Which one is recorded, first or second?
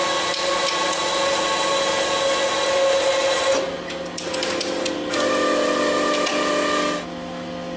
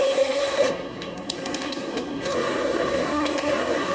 first